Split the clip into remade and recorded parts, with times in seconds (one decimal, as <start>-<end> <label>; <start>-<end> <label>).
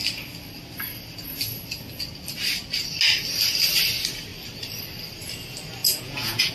0.0-5.8 recorded; 5.8-6.5 remade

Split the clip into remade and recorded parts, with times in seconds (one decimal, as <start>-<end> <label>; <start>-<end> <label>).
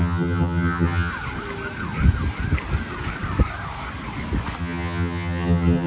0.0-1.1 remade; 1.1-4.6 recorded; 4.6-5.9 remade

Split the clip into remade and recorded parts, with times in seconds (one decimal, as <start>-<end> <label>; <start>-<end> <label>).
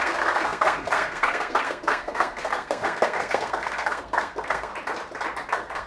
0.0-4.7 remade; 4.7-5.5 recorded; 5.5-5.9 remade